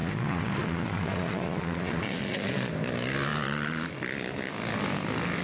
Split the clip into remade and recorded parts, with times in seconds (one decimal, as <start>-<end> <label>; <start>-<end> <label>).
0.0-2.7 remade; 2.7-5.4 recorded